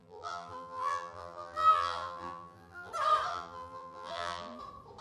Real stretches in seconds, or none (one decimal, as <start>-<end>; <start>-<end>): 2.9-3.3; 4.6-5.0